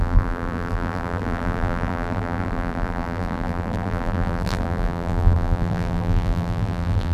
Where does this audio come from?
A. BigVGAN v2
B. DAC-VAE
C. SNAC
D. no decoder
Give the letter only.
A